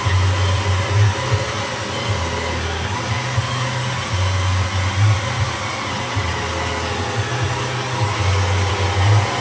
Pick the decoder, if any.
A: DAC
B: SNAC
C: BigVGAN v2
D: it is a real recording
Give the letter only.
D